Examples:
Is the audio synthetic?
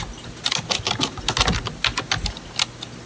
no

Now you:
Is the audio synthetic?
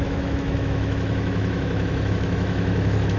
yes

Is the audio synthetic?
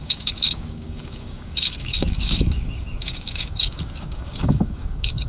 yes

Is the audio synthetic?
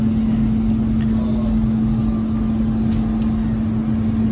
no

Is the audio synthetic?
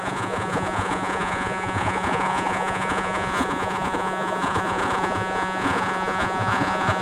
yes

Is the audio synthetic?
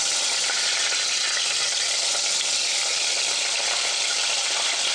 no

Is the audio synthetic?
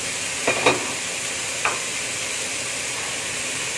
no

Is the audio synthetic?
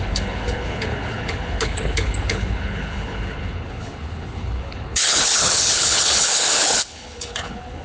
yes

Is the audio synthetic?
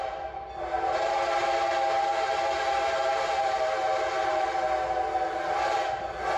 no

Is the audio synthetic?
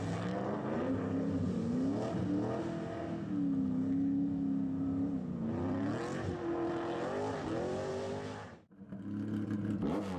no